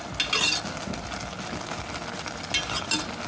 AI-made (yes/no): no